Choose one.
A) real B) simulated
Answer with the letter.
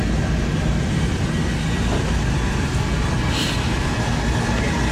A